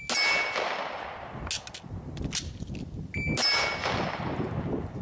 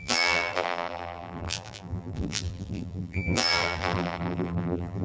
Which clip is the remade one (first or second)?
second